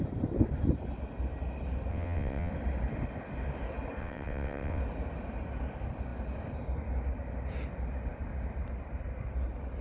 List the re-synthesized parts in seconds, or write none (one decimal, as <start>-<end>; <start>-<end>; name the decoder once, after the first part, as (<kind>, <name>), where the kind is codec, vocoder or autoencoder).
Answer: 1.9-2.5 (vocoder, WaveNeXt); 4.0-4.8